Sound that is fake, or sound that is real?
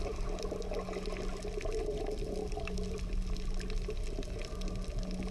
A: real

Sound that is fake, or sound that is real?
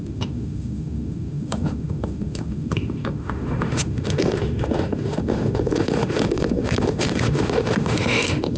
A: fake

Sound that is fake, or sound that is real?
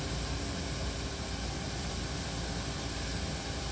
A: real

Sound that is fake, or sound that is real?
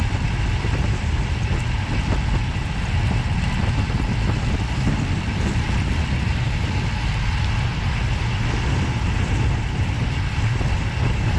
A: real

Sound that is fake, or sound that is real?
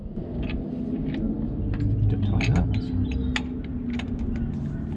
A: real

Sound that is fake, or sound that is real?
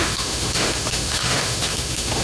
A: fake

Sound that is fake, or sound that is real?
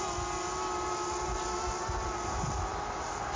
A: real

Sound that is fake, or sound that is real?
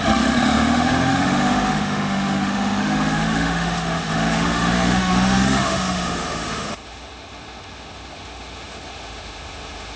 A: fake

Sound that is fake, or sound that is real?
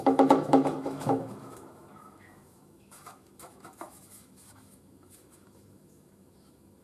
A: fake